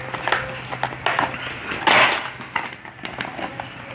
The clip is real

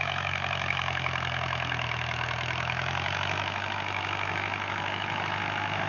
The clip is fake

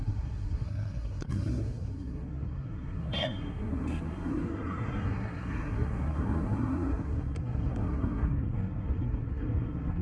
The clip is fake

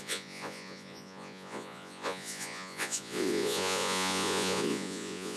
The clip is fake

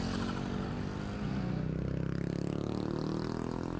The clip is real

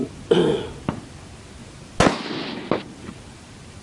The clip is real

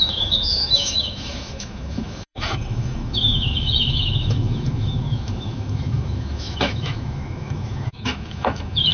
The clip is fake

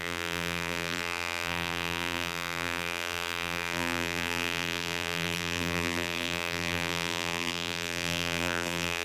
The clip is fake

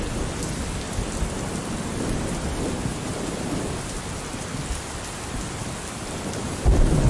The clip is fake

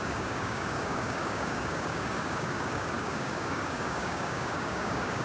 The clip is fake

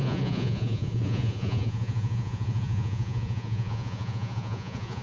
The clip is fake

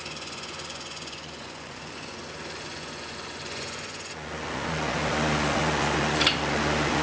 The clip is fake